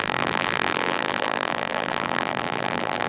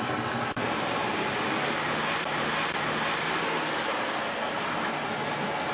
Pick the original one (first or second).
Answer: second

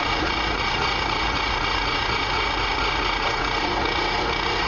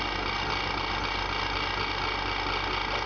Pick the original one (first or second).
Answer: second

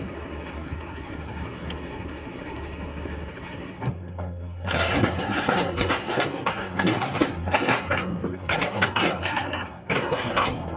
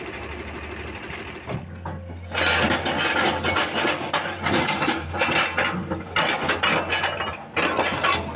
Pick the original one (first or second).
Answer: second